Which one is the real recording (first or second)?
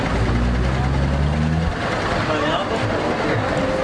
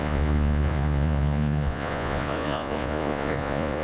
first